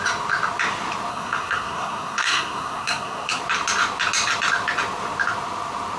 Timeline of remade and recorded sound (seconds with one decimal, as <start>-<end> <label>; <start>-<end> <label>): 0.0-1.1 recorded; 1.1-3.4 remade; 3.4-6.0 recorded